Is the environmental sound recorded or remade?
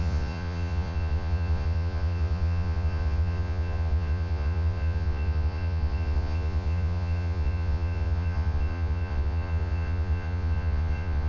remade